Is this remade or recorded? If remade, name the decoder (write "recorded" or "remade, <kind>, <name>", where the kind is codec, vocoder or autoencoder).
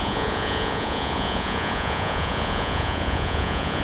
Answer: remade, vocoder, Vocos